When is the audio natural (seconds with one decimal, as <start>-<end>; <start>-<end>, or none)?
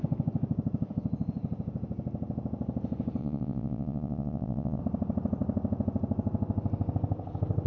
0.0-3.2; 4.8-7.7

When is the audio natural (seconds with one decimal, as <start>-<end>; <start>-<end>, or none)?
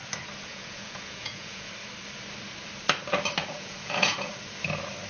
0.0-0.5; 1.7-3.4; 4.3-5.1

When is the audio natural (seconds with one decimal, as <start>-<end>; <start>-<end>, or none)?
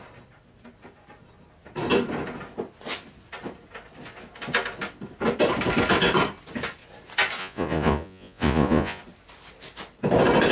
0.0-7.4; 9.0-10.5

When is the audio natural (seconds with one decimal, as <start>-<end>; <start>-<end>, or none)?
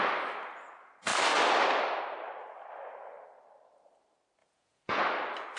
0.0-4.4; 5.0-5.6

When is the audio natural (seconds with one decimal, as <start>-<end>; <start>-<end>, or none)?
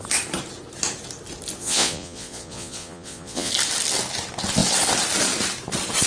0.0-1.6; 3.5-6.1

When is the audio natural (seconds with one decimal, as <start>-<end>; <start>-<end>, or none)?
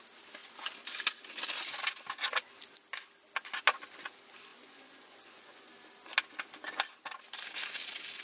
0.0-4.5; 5.7-8.2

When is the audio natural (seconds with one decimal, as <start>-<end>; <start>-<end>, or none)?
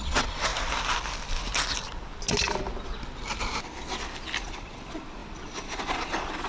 0.5-4.4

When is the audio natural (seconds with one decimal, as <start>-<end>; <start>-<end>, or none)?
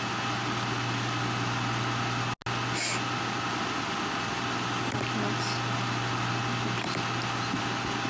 0.0-8.1